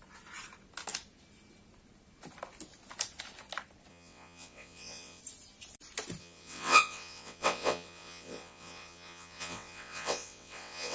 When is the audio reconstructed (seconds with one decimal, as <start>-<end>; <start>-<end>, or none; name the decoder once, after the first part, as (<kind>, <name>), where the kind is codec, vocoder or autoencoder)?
3.9-5.2 (vocoder, WaveNeXt); 6.2-10.9